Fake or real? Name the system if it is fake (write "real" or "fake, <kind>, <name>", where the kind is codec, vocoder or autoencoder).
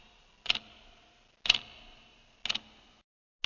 real